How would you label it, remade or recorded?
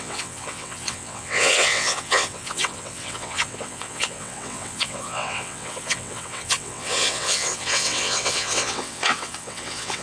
remade